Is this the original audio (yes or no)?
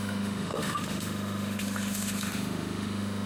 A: no